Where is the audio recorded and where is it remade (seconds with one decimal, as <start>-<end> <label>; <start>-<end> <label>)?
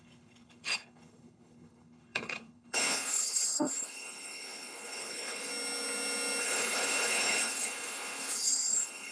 0.0-5.5 remade; 5.5-6.4 recorded; 6.4-9.1 remade